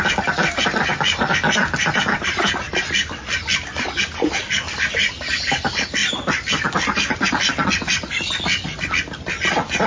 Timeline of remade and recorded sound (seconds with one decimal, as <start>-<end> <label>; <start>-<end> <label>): 0.0-9.9 recorded